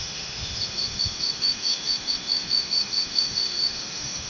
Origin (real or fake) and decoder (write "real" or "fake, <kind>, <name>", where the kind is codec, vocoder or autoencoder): fake, autoencoder, DAC-VAE